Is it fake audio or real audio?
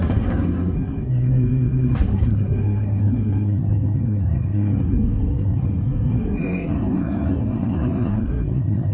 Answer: fake